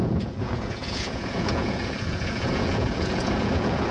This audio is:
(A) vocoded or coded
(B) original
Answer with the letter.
A